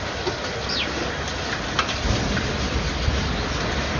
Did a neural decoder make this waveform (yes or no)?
no